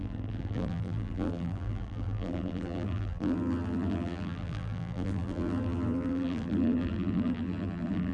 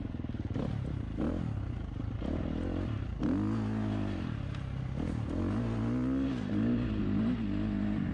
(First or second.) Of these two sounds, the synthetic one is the first